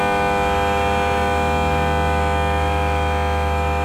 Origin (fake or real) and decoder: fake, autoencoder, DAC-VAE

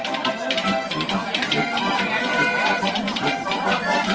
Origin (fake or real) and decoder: fake, vocoder, BigVGAN v2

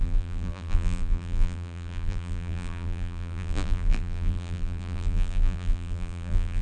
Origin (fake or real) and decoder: fake, vocoder, BigVGAN v2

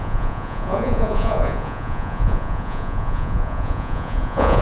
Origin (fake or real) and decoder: fake, vocoder, Vocos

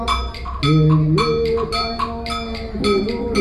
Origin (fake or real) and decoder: real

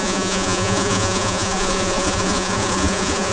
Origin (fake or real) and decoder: fake, vocoder, Vocos